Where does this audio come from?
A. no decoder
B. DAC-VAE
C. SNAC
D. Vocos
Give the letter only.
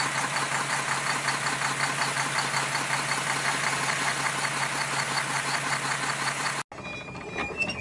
A